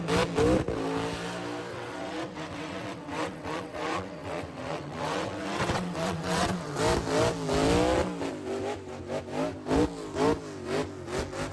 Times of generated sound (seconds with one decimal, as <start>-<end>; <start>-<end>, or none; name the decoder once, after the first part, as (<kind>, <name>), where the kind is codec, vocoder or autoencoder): 1.7-6.8 (vocoder, WaveNeXt)